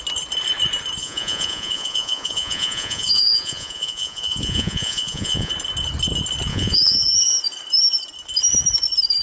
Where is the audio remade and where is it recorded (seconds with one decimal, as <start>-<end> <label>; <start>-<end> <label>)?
0.0-1.0 recorded; 1.0-5.5 remade; 5.5-6.5 recorded; 6.5-7.4 remade; 7.4-9.2 recorded